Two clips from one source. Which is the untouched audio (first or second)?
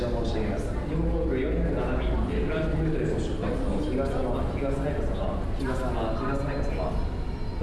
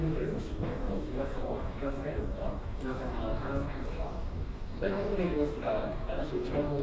first